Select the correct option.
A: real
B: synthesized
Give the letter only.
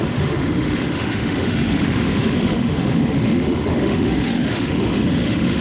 B